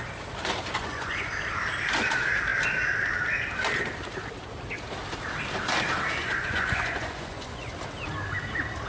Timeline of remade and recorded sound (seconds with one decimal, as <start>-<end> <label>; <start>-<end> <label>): 0.0-0.7 recorded; 0.7-1.3 remade; 1.3-6.2 recorded; 6.2-7.7 remade; 7.7-8.9 recorded